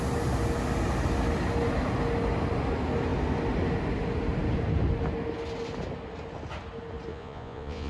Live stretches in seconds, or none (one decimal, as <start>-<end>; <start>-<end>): 0.0-7.1